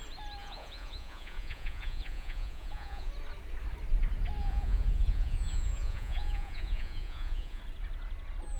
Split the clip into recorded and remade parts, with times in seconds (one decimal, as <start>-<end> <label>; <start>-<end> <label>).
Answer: 0.0-0.4 recorded; 0.4-3.1 remade; 3.1-4.4 recorded; 4.4-7.6 remade; 7.6-8.6 recorded